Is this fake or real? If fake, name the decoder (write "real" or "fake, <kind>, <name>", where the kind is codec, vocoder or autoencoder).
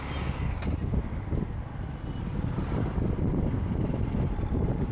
real